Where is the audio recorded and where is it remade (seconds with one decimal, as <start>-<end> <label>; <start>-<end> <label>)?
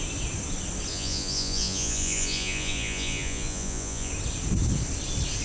0.0-0.9 recorded; 0.9-4.1 remade; 4.1-5.4 recorded